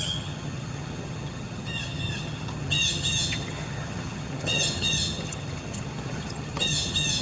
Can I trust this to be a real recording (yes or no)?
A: no